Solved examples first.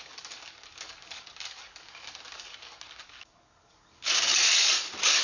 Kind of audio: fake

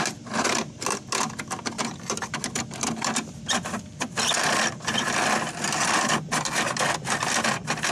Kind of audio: real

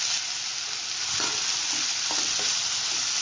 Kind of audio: real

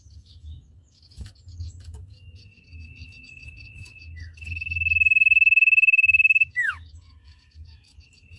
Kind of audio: fake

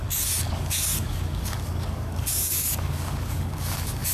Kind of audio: fake